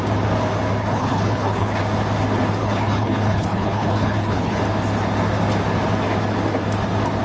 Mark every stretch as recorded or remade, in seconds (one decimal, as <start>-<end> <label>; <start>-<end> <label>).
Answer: 0.0-0.8 recorded; 0.8-1.8 remade; 1.8-2.6 recorded; 2.6-4.6 remade; 4.6-7.2 recorded